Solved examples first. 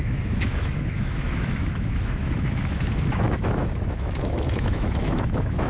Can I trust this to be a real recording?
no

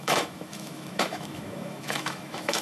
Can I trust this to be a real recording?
no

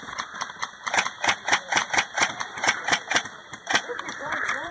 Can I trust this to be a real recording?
no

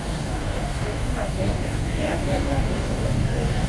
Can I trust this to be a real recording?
no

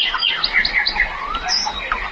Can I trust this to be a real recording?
yes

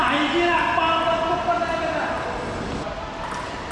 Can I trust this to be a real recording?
yes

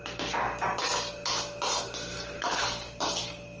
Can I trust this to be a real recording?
yes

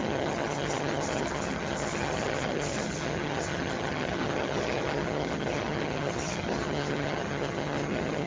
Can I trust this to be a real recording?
no